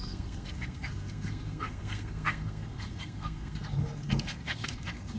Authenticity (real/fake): fake